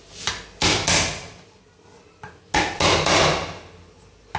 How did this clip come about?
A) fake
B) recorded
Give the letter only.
B